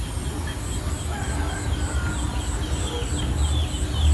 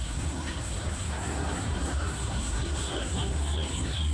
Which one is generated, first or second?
second